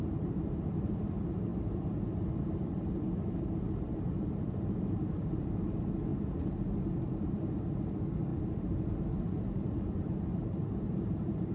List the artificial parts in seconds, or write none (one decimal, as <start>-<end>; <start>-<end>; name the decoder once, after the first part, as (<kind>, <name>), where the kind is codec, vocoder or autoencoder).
0.0-6.1 (vocoder, BigVGAN v2); 7.0-11.5

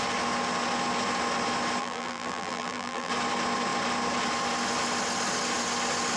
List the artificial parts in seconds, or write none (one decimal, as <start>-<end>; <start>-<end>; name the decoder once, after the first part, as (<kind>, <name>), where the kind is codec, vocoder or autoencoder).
1.8-3.1 (vocoder, BigVGAN v2)